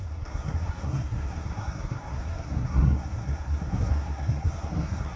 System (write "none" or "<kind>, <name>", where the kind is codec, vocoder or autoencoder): codec, SNAC